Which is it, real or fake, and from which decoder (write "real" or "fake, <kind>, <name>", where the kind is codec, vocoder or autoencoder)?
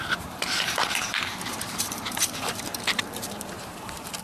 fake, vocoder, BigVGAN v2